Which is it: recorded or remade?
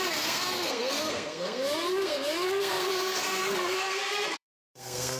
remade